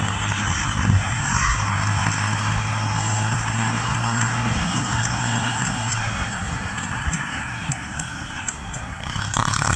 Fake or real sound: fake